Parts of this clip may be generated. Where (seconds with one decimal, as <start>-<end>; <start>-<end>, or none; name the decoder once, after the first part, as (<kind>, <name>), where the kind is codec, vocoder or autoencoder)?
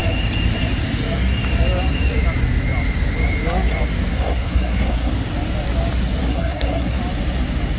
4.1-5.1 (codec, SNAC); 6.2-7.0